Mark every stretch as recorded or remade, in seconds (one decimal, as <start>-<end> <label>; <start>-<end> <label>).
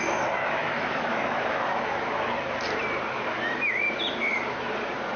0.0-0.4 recorded; 0.4-2.1 remade; 2.1-5.2 recorded